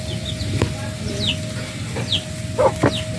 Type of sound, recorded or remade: recorded